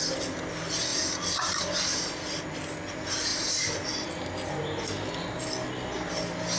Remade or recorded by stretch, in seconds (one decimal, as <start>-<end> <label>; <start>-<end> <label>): 0.0-6.6 recorded